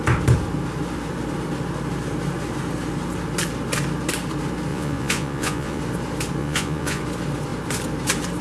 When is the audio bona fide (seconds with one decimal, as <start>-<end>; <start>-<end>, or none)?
0.0-4.7; 5.8-6.4; 7.0-8.4